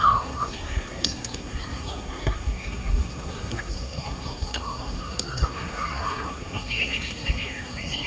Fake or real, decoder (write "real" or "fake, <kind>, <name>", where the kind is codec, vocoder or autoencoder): fake, codec, SNAC